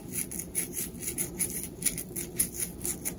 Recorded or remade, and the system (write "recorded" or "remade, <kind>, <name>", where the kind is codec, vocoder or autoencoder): recorded